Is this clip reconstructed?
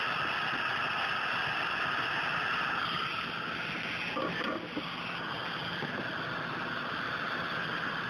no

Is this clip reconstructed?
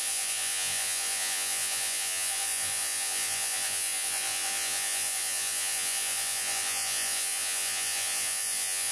yes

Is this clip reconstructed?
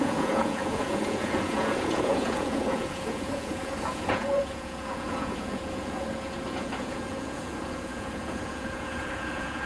yes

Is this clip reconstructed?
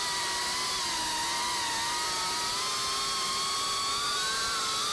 no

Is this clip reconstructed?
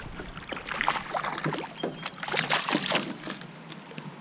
no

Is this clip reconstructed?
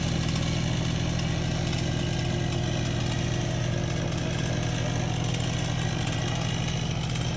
no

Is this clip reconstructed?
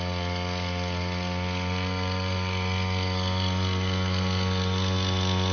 no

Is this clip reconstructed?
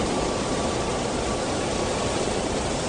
no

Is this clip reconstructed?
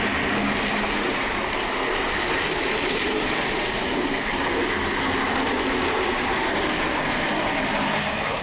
no